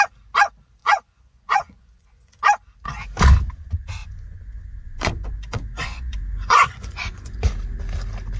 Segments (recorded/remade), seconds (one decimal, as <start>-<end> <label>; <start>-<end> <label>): 0.0-0.8 recorded; 0.8-2.4 remade; 2.4-4.0 recorded; 4.0-7.5 remade; 7.5-8.4 recorded